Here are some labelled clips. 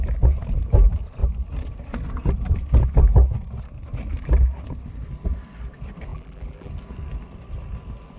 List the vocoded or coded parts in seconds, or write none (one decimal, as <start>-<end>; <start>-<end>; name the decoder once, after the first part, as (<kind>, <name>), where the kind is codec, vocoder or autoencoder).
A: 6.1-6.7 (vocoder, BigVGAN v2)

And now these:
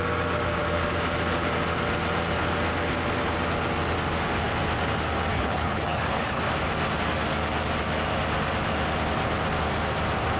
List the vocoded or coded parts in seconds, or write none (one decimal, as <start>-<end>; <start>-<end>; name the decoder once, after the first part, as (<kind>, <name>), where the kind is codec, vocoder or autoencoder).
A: 5.3-6.5 (codec, HILCodec)

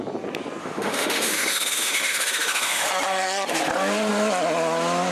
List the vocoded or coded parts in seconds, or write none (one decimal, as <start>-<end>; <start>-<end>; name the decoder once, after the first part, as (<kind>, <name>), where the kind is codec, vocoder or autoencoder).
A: 0.6-2.9 (autoencoder, DAC-VAE)

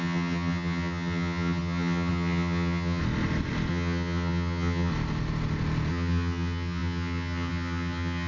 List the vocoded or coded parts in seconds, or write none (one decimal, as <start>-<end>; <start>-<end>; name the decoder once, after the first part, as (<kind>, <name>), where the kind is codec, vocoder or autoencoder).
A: 0.0-3.0 (vocoder, HiFi-GAN); 3.7-4.9; 5.9-8.3

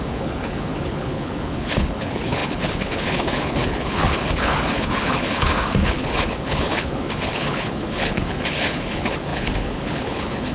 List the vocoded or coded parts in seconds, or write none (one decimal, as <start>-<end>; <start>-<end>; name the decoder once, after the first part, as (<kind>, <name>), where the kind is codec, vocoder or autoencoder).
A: 0.0-10.5 (codec, HILCodec)

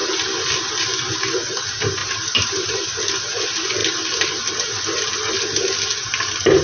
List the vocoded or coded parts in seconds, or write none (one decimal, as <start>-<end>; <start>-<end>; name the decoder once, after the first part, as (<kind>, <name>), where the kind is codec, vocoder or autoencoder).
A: 2.0-3.1 (vocoder, BigVGAN v2)